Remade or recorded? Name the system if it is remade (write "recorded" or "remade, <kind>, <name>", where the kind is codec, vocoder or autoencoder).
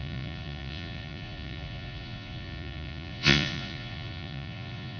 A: remade, vocoder, Vocos